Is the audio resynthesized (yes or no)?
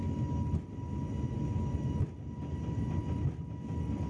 no